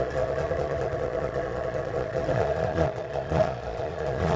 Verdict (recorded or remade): remade